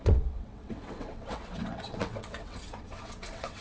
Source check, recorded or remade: remade